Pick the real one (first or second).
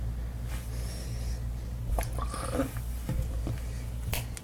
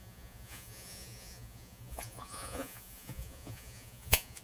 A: first